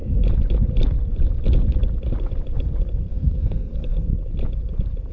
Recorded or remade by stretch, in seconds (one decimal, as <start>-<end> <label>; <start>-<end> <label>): 0.0-3.1 recorded; 3.1-4.1 remade; 4.1-5.1 recorded